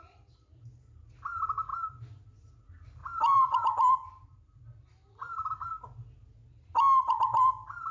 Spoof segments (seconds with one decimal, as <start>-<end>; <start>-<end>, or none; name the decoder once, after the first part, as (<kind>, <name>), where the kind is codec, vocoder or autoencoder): 3.0-5.5 (vocoder, BigVGAN v2)